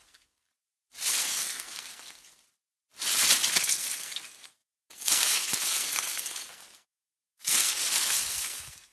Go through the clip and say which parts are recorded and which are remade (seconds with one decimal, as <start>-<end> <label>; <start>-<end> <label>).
0.0-0.5 remade; 0.5-1.1 recorded; 1.1-2.4 remade; 2.4-3.6 recorded; 3.6-8.9 remade